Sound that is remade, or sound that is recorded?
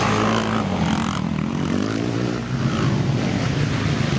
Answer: recorded